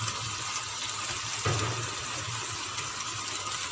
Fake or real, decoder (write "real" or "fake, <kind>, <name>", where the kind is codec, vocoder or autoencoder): real